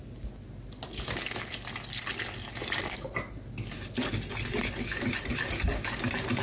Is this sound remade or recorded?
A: recorded